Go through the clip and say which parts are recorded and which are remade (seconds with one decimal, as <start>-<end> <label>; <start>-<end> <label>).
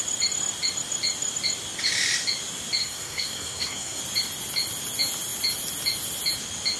0.0-2.8 recorded; 2.8-4.0 remade; 4.0-6.8 recorded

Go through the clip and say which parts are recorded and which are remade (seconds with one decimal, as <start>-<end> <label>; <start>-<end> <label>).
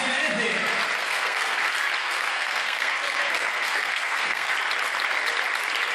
0.0-1.0 recorded; 1.0-1.6 remade; 1.6-2.0 recorded; 2.0-4.5 remade; 4.5-5.9 recorded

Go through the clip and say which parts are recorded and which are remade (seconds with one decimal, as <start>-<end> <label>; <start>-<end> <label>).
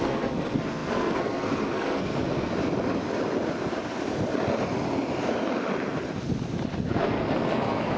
0.0-2.5 remade; 2.5-6.9 recorded; 6.9-8.0 remade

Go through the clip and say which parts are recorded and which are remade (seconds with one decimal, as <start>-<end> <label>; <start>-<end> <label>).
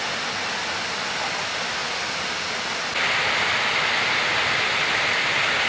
0.0-5.7 recorded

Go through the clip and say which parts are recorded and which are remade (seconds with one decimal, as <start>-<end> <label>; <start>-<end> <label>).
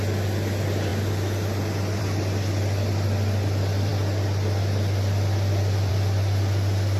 0.0-7.0 recorded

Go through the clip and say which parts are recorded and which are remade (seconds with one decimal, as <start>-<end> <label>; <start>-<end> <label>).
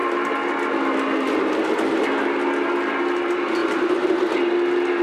0.0-5.0 recorded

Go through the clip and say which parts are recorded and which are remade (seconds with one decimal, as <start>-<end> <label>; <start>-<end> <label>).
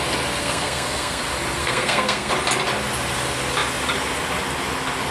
0.0-0.4 recorded; 0.4-1.2 remade; 1.2-1.6 recorded; 1.6-2.3 remade; 2.3-5.1 recorded